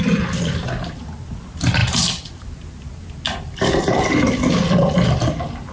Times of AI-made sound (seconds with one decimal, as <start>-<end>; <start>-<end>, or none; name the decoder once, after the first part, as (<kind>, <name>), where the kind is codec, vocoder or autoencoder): none

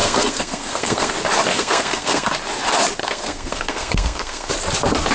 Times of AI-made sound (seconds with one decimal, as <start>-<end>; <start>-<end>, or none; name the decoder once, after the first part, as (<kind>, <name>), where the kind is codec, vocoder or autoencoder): 0.0-1.1 (codec, SNAC); 1.5-2.3; 3.0-4.5

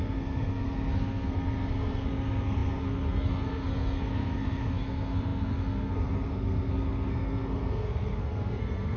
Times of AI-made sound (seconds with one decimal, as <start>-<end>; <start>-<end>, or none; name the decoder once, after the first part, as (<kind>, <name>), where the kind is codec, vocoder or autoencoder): 0.0-9.0 (codec, SNAC)